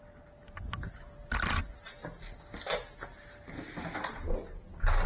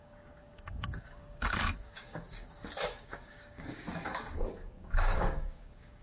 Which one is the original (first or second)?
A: first